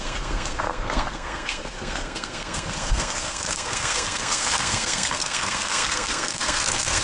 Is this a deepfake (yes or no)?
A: yes